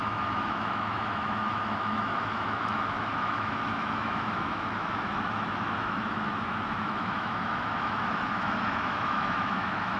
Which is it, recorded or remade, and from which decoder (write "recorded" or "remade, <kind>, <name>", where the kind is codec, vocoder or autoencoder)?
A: remade, autoencoder, DAC-VAE